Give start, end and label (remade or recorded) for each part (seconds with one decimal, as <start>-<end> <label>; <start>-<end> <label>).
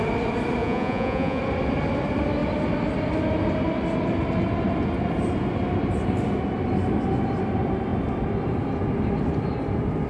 0.0-0.6 recorded; 0.6-1.4 remade; 1.4-10.1 recorded